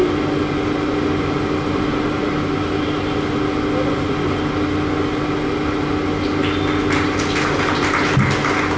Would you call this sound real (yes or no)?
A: yes